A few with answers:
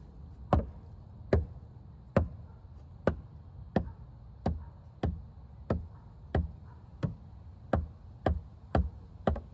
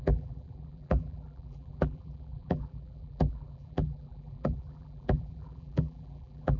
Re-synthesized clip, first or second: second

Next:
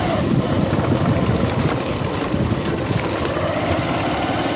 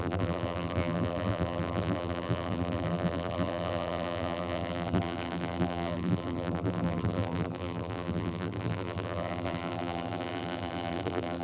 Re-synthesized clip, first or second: second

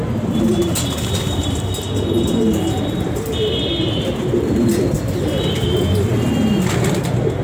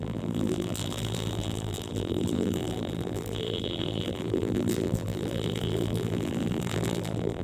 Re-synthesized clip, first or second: second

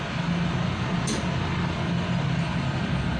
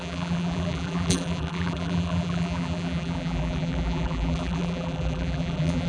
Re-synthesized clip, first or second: second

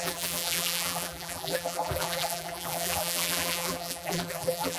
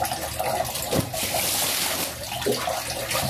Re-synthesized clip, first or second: first